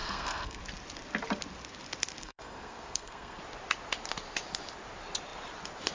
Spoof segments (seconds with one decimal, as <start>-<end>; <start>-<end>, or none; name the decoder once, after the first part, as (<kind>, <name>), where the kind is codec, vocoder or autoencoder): 0.0-0.6 (codec, SNAC); 2.2-3.4